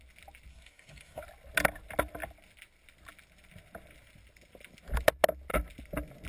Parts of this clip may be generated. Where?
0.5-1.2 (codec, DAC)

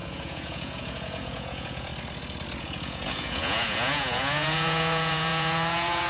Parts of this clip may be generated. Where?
0.0-1.9 (vocoder, Vocos); 2.6-6.1

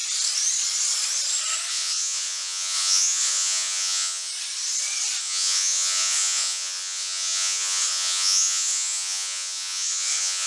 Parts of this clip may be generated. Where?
1.7-4.3 (vocoder, Vocos); 5.2-10.5

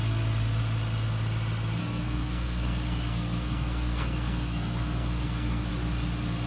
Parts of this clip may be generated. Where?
1.8-5.7 (codec, SNAC)